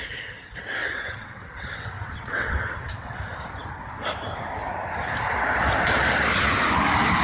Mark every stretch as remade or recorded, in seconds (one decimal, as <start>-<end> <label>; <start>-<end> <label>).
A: 0.0-0.8 recorded; 0.8-3.2 remade; 3.2-7.2 recorded